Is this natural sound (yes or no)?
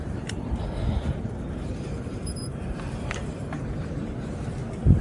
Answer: no